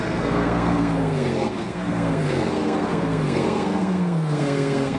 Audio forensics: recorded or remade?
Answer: remade